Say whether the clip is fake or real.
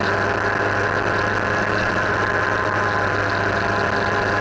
real